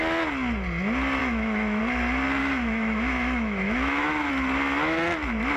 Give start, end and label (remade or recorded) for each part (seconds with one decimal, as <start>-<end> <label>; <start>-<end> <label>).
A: 0.0-1.2 recorded; 1.2-1.8 remade; 1.8-2.4 recorded; 2.4-4.3 remade; 4.3-5.6 recorded